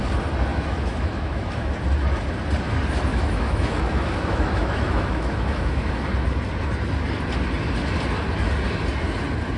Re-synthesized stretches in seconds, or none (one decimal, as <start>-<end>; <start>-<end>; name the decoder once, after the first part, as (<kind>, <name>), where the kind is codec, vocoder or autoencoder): 0.5-1.7 (autoencoder, DAC-VAE); 3.1-5.9